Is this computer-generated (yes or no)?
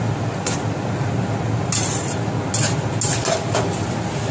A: no